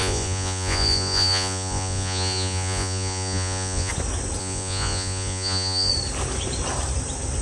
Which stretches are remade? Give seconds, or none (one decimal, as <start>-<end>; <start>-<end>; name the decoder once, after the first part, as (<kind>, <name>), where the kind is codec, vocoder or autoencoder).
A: 0.0-3.9 (vocoder, Vocos); 4.4-5.9